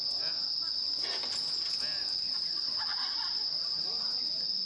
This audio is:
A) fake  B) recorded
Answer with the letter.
B